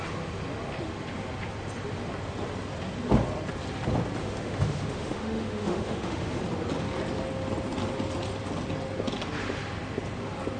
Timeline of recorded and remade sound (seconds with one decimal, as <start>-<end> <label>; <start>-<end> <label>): 0.0-4.2 recorded; 4.2-6.4 remade; 6.4-10.6 recorded